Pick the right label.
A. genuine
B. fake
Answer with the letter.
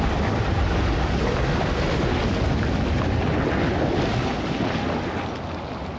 A